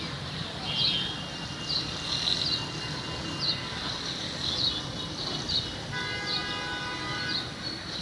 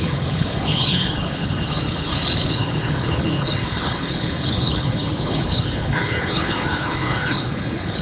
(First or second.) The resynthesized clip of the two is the second